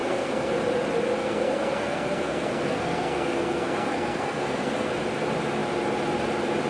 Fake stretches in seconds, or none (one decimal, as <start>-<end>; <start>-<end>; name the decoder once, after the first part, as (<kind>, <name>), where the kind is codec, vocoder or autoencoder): 0.0-0.5 (codec, SNAC); 1.2-4.9